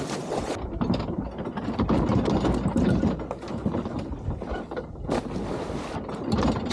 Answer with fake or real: real